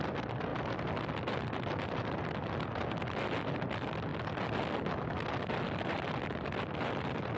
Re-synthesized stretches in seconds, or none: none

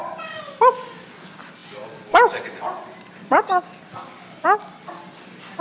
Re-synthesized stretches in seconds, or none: none

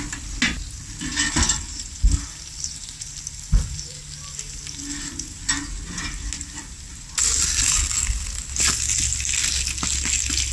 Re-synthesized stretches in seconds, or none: none